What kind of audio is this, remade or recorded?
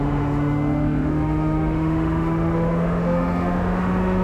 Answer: remade